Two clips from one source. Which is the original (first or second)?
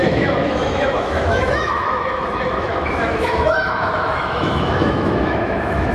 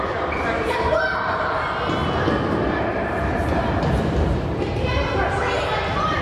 second